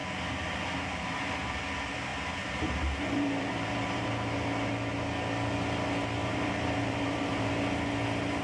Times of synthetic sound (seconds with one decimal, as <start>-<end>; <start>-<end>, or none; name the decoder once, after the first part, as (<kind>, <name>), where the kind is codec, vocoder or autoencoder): 0.0-1.5 (vocoder, BigVGAN v2); 2.1-4.1; 6.2-7.5